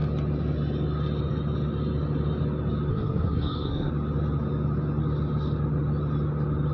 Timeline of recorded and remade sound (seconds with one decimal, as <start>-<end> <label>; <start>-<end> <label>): 0.0-2.9 recorded; 2.9-3.9 remade; 3.9-6.7 recorded